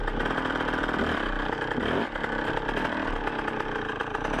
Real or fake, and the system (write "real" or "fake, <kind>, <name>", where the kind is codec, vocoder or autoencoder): real